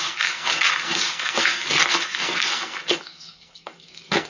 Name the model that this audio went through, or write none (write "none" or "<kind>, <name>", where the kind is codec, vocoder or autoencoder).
codec, SNAC